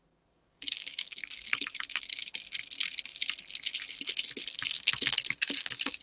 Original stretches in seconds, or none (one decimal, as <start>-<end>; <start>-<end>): 2.1-4.5